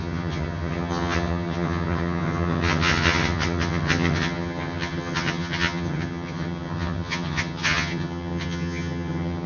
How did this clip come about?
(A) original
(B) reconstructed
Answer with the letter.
B